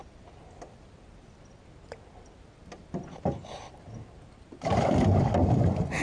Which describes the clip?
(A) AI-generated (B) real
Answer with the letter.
B